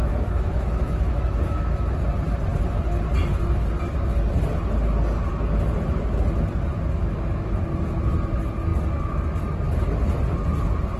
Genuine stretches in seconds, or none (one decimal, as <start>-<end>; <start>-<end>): 1.9-7.0; 7.6-11.0